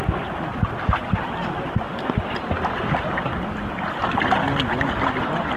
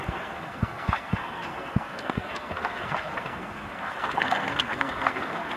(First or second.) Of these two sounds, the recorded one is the first